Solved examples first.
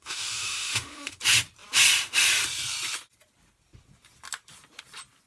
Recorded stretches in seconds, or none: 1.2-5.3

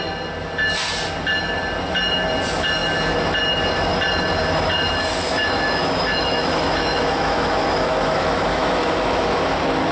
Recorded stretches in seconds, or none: 0.0-5.3; 9.5-9.9

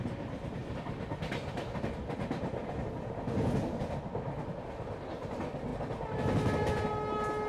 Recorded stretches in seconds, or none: 0.0-7.5